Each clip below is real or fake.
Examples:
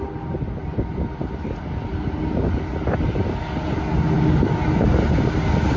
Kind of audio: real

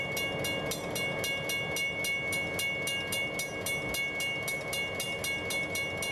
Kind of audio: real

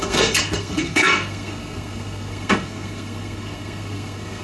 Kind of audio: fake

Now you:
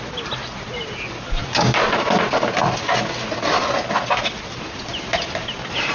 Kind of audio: real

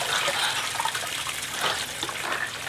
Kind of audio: real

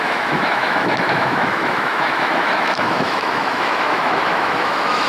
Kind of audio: fake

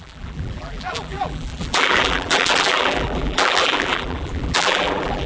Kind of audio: fake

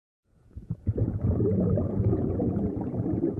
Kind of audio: fake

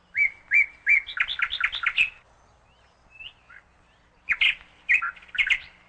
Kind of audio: real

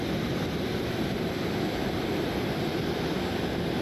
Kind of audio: fake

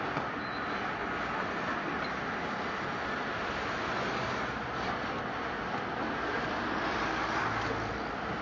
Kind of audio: real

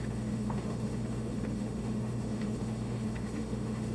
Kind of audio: fake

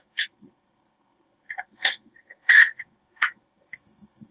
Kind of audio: fake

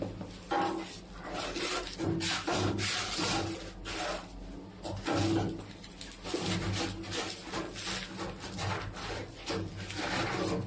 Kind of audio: real